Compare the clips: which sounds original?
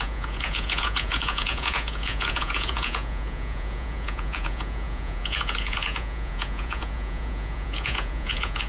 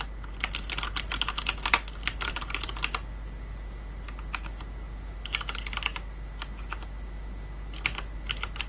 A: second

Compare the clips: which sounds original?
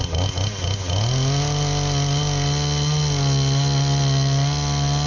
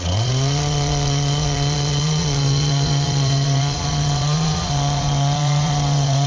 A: first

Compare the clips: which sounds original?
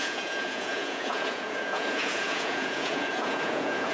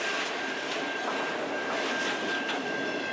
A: second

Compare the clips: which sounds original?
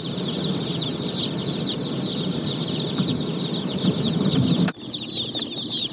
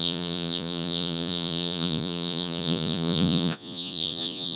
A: first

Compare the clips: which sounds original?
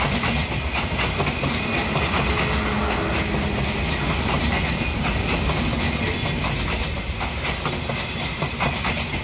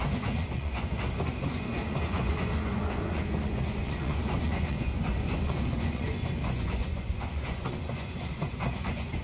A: first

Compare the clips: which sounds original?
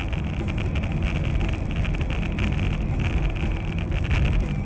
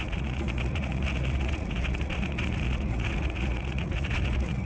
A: first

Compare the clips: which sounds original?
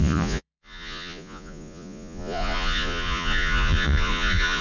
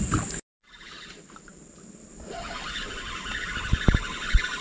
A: second